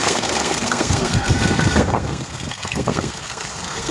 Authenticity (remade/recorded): remade